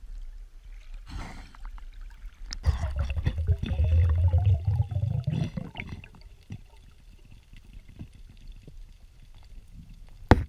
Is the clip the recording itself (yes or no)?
yes